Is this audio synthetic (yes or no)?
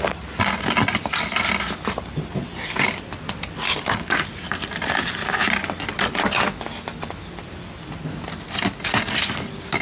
no